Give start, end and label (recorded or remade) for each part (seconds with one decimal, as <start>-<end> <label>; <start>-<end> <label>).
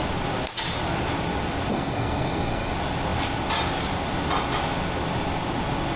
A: 0.0-1.7 recorded; 1.7-2.7 remade; 2.7-6.0 recorded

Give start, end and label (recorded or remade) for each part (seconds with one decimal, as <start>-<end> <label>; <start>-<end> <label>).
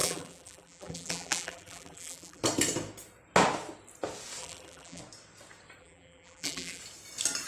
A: 0.0-2.4 remade; 2.4-4.4 recorded; 4.4-5.0 remade; 5.0-5.8 recorded; 5.8-6.8 remade; 6.8-7.5 recorded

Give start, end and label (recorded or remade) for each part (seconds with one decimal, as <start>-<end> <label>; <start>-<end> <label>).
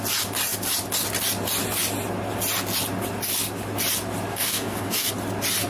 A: 0.0-4.3 recorded; 4.3-5.1 remade; 5.1-5.7 recorded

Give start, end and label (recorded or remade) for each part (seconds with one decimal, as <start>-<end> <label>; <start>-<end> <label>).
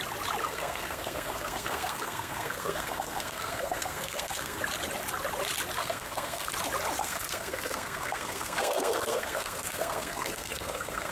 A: 0.0-0.4 recorded; 0.4-4.6 remade; 4.6-5.8 recorded; 5.8-6.5 remade; 6.5-7.0 recorded; 7.0-11.1 remade